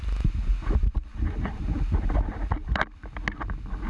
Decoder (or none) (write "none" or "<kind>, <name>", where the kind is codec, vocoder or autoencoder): none